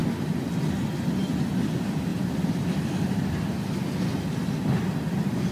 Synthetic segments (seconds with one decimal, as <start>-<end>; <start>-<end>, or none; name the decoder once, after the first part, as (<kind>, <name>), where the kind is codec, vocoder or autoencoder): none